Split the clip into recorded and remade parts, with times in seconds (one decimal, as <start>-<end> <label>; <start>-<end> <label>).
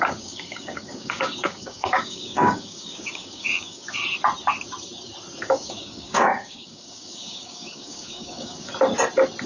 0.0-4.0 remade; 4.0-5.4 recorded; 5.4-8.7 remade; 8.7-9.5 recorded